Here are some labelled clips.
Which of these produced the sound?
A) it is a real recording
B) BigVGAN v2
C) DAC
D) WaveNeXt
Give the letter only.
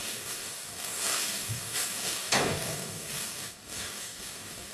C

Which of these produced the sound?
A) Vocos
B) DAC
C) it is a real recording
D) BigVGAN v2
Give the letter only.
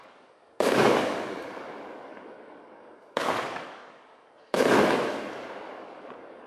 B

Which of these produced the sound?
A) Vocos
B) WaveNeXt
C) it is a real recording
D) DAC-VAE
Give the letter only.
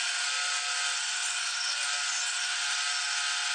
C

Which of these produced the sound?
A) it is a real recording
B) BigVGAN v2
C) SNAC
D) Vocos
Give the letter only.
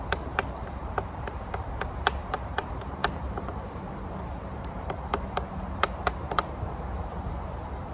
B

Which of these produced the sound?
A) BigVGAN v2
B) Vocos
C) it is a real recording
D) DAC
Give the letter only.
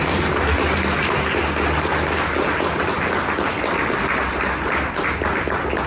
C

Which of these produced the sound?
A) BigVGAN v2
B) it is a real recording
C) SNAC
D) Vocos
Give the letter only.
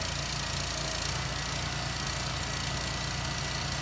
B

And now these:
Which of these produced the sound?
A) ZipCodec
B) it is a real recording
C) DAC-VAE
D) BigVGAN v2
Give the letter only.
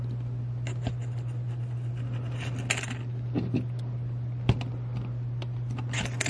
B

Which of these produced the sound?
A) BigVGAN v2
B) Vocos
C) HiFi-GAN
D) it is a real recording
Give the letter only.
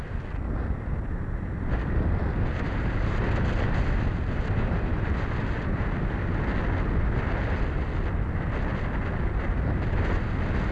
D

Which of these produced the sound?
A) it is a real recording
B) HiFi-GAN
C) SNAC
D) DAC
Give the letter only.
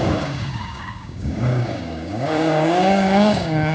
D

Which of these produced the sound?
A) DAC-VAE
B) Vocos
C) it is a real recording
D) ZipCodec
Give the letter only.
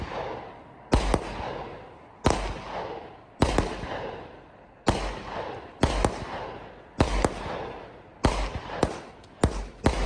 C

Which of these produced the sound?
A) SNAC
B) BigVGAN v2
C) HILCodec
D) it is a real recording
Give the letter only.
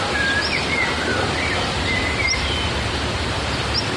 D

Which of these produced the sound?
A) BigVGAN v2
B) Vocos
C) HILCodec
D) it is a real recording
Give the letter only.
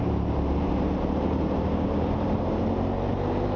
A